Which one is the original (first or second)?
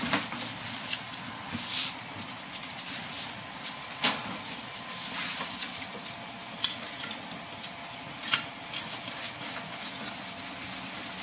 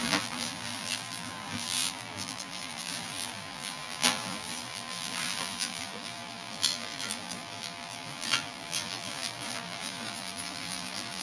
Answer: first